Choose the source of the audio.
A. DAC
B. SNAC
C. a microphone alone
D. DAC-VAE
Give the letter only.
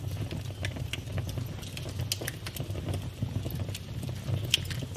C